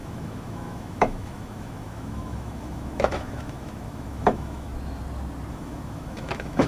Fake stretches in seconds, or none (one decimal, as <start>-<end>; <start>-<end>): 0.0-4.7; 5.5-6.7